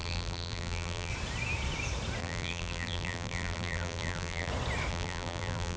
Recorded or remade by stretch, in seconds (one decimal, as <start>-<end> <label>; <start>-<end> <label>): 0.0-1.1 remade; 1.1-2.2 recorded; 2.2-4.5 remade; 4.5-4.9 recorded; 4.9-5.8 remade